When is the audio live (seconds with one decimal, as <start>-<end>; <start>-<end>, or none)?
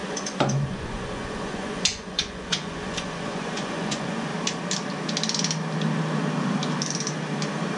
4.3-7.8